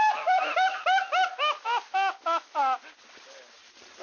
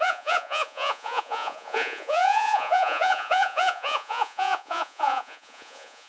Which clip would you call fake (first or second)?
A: second